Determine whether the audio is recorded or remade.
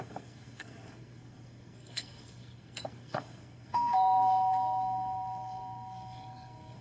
remade